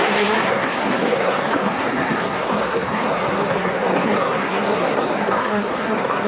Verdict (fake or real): fake